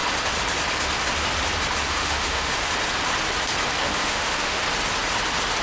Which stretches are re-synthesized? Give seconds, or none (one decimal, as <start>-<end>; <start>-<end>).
1.9-2.7; 3.9-4.6